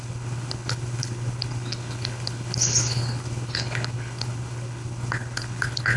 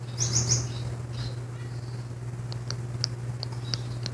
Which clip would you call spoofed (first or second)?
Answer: first